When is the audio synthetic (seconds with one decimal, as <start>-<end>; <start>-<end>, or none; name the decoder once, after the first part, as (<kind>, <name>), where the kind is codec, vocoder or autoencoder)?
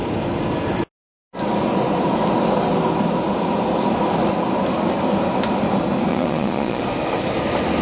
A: 6.1-6.8 (vocoder, Vocos)